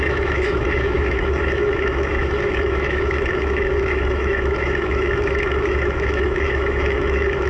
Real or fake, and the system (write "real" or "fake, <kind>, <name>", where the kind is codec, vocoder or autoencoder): fake, autoencoder, DAC-VAE